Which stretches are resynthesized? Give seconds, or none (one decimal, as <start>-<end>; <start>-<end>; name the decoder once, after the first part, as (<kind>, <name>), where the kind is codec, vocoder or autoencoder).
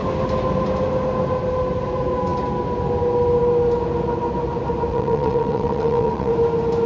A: 4.9-6.3 (vocoder, WaveNeXt)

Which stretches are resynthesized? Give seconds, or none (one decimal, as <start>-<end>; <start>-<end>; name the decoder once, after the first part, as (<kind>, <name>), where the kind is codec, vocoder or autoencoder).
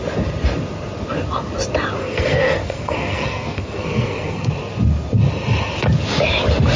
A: 2.0-4.5 (codec, SNAC)